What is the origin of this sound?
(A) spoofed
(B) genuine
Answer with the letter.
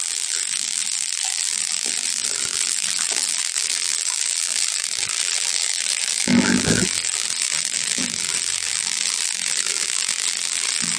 A